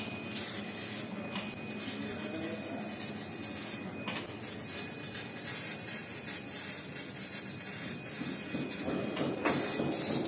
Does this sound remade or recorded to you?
recorded